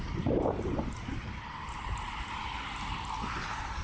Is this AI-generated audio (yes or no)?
no